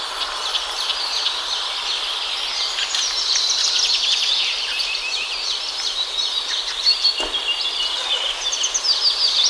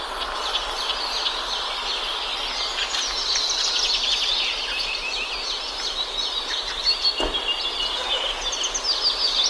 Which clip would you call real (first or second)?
second